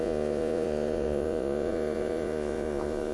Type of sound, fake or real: fake